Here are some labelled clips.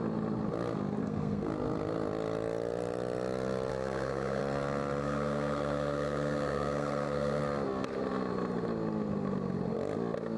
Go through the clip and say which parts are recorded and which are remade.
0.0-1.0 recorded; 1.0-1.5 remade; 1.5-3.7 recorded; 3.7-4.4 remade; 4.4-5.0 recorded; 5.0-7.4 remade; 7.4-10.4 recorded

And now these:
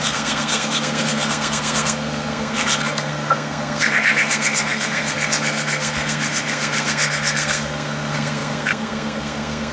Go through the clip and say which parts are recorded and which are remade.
0.0-9.7 remade

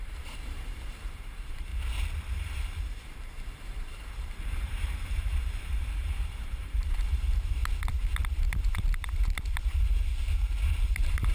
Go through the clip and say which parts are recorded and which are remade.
0.0-1.7 remade; 1.7-2.3 recorded; 2.3-7.6 remade; 7.6-10.8 recorded; 10.8-11.3 remade

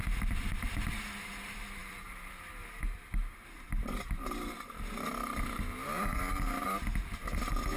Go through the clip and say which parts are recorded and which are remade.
0.0-7.8 remade

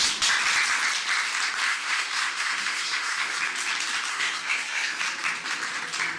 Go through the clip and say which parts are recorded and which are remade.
0.0-1.7 recorded; 1.7-3.4 remade; 3.4-4.1 recorded; 4.1-5.0 remade; 5.0-6.2 recorded

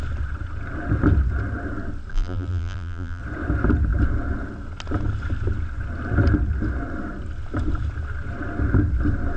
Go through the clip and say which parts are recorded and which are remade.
0.0-2.1 recorded; 2.1-3.2 remade; 3.2-9.4 recorded

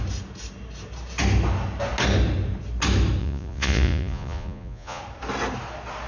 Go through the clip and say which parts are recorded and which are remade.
0.0-3.2 recorded; 3.2-5.0 remade; 5.0-6.1 recorded

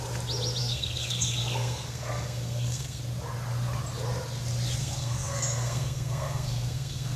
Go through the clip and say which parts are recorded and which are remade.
0.0-0.6 recorded; 0.6-3.0 remade; 3.0-4.8 recorded; 4.8-7.2 remade